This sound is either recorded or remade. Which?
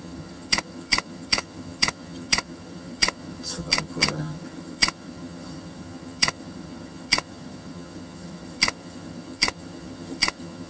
remade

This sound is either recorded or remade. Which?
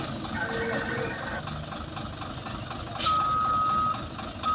recorded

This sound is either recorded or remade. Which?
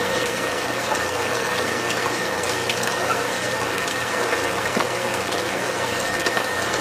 remade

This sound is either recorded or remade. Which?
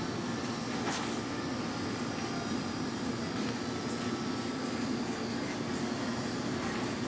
recorded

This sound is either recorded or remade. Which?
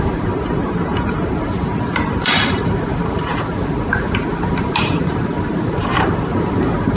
remade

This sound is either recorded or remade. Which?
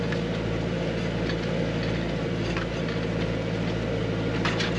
recorded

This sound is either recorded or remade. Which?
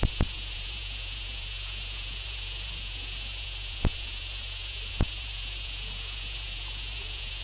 remade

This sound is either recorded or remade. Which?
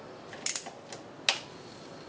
recorded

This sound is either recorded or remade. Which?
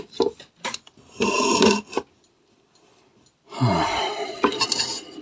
remade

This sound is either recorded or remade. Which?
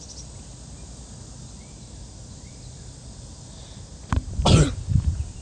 recorded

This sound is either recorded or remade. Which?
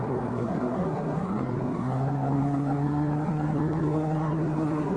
remade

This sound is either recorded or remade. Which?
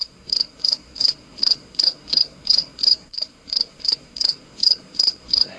remade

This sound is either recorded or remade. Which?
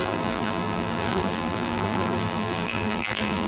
remade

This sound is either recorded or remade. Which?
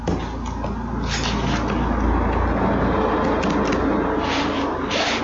recorded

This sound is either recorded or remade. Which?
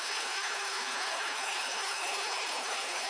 remade